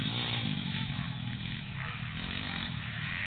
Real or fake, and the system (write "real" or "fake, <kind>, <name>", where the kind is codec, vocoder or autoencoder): fake, autoencoder, DAC-VAE